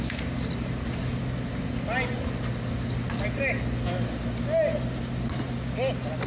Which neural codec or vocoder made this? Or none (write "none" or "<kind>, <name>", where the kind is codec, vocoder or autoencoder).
none